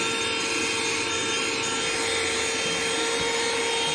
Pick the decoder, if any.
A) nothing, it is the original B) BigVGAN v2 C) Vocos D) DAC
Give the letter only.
A